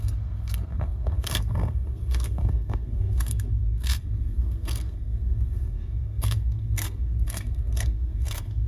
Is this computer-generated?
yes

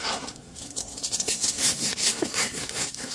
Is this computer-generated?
yes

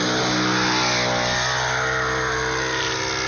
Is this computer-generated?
no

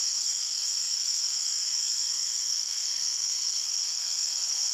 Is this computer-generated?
yes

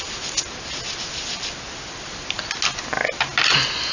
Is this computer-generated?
no